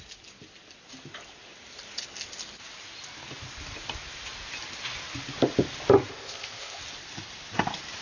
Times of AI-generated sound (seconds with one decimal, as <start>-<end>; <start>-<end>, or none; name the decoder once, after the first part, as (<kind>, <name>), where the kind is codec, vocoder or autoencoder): 6.1-6.8 (codec, ZipCodec)